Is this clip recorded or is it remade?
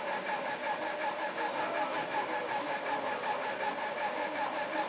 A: recorded